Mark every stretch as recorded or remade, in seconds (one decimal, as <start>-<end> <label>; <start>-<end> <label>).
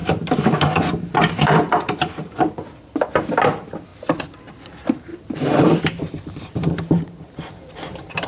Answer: 0.0-3.9 remade; 3.9-4.6 recorded; 4.6-8.3 remade